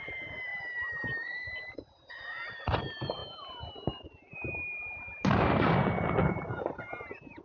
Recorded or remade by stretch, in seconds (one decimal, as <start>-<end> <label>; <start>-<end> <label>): 0.0-3.2 remade; 3.2-6.2 recorded; 6.2-7.4 remade